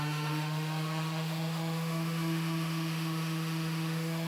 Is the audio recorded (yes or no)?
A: no